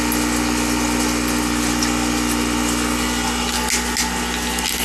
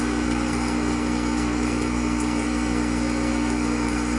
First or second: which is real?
first